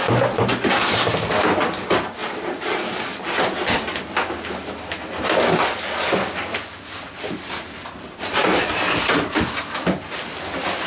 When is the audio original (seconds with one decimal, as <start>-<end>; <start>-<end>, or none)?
0.0-10.9